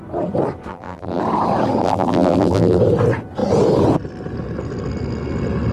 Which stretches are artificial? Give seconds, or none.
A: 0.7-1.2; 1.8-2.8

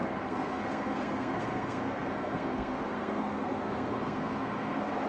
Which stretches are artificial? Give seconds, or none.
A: 0.0-5.1

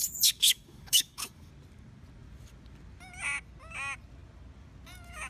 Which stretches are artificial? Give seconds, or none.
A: 0.0-1.5